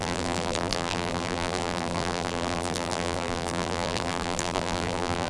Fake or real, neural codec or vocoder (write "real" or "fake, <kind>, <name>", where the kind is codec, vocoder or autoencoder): fake, vocoder, BigVGAN v2